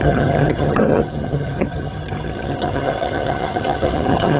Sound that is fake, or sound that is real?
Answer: fake